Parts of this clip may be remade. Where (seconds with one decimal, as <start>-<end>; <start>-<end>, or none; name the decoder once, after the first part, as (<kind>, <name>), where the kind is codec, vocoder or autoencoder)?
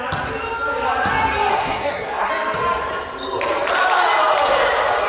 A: 1.5-2.3 (codec, SNAC)